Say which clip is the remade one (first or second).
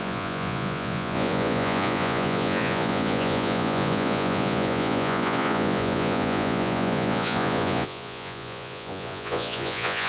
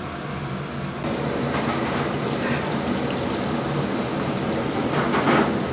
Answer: first